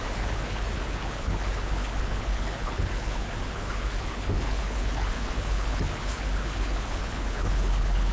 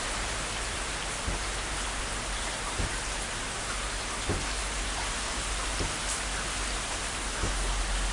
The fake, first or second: first